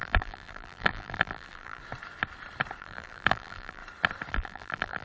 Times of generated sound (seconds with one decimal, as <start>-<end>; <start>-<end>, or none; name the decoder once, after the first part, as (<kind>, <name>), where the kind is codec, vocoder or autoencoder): 0.0-1.8 (vocoder, BigVGAN v2); 2.8-3.8; 4.3-5.0

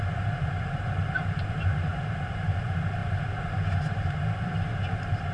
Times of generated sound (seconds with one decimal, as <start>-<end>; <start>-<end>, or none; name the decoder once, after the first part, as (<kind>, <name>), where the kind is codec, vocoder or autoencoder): 0.0-5.3 (vocoder, BigVGAN v2)

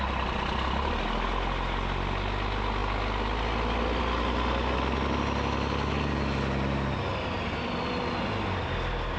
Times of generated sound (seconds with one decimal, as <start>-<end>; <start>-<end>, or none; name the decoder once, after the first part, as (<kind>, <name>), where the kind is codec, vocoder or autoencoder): none

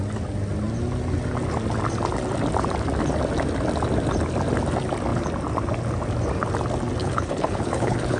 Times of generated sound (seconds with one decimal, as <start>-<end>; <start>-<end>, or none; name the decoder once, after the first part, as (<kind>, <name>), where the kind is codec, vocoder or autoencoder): 7.0-8.2 (codec, HILCodec)